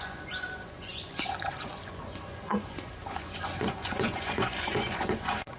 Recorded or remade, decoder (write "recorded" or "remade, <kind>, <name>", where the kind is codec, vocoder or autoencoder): remade, vocoder, Vocos